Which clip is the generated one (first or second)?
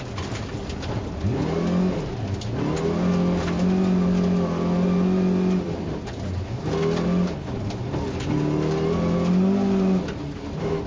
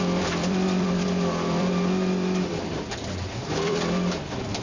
second